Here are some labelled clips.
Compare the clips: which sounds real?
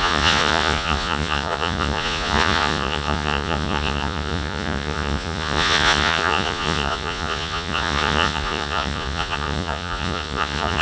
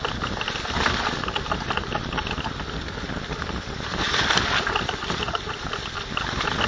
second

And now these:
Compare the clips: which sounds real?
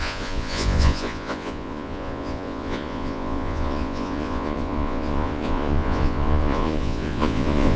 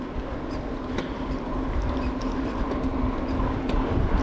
second